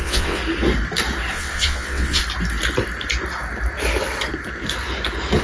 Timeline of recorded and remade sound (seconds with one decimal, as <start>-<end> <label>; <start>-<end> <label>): 0.0-0.4 remade; 0.4-1.3 recorded; 1.3-2.2 remade; 2.2-5.4 recorded